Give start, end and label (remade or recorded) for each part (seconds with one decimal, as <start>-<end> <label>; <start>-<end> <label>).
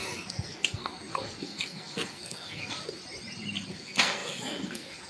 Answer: 0.0-3.0 remade; 3.0-3.7 recorded; 3.7-5.1 remade